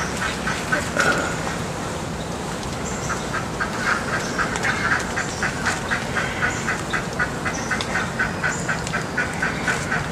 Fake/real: real